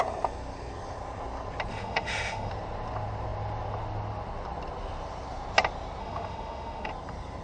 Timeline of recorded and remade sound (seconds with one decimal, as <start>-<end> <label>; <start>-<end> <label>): 0.0-1.7 recorded; 1.7-2.5 remade; 2.5-6.0 recorded; 6.0-6.9 remade; 6.9-7.4 recorded